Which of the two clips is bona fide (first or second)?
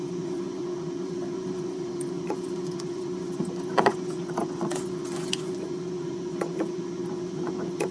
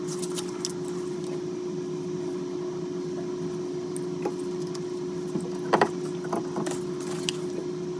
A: second